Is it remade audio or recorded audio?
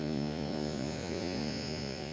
remade